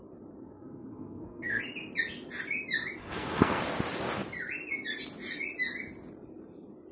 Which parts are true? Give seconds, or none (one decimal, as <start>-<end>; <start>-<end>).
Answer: 0.0-0.4; 1.6-3.0; 3.6-6.9